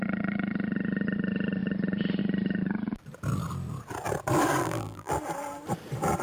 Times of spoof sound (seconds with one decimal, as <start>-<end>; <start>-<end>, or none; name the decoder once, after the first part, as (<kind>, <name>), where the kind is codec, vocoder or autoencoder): 4.6-5.1 (vocoder, BigVGAN v2)